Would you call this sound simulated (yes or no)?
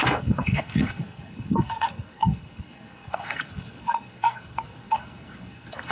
yes